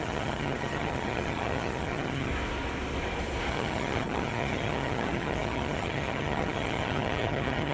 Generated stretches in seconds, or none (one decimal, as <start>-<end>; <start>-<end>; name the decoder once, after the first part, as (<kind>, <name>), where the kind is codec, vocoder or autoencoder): 0.0-2.3 (vocoder, HiFi-GAN); 3.5-7.7